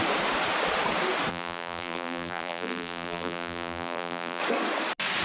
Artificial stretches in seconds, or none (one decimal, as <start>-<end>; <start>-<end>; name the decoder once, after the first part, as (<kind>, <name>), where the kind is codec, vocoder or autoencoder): 1.3-4.4 (vocoder, BigVGAN v2)